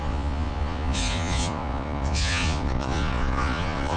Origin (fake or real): fake